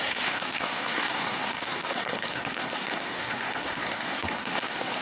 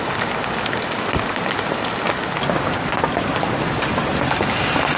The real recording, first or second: second